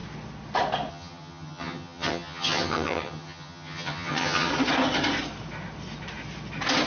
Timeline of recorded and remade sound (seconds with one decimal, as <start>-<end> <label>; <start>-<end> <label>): 0.0-0.9 recorded; 0.9-4.5 remade; 4.5-6.9 recorded